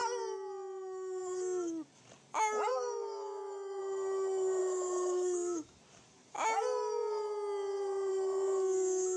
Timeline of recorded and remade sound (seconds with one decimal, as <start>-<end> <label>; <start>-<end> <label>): 0.0-2.7 recorded; 2.7-3.8 remade; 3.8-4.6 recorded; 4.6-5.8 remade; 5.8-9.2 recorded

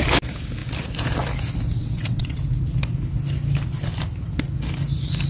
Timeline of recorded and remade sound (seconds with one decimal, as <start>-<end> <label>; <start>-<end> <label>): 0.0-1.8 recorded; 1.8-2.4 remade; 2.4-5.3 recorded

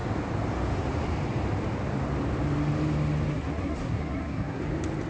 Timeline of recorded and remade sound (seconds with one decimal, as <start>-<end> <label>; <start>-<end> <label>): 0.0-3.3 recorded; 3.3-4.6 remade; 4.6-5.1 recorded

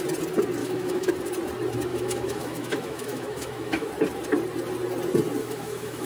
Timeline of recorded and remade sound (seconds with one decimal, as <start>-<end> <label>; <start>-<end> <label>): 0.0-0.6 recorded; 0.6-1.1 remade; 1.1-1.9 recorded; 1.9-3.9 remade; 3.9-5.4 recorded; 5.4-6.1 remade

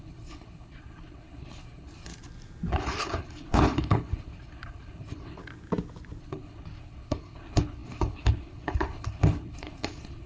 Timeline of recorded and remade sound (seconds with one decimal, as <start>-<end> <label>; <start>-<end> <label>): 0.0-2.1 remade; 2.1-2.7 recorded; 2.7-5.4 remade; 5.4-6.2 recorded; 6.2-10.3 remade

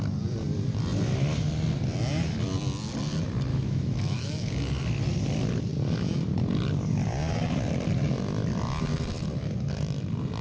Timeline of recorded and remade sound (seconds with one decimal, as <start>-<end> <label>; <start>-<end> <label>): 0.0-3.5 recorded; 3.5-4.5 remade; 4.5-10.4 recorded

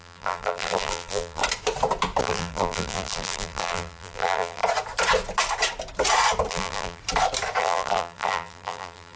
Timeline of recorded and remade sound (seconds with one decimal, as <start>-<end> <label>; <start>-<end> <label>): 0.0-1.4 remade; 1.4-2.2 recorded; 2.2-4.6 remade; 4.6-6.5 recorded; 6.5-7.0 remade; 7.0-7.6 recorded; 7.6-9.2 remade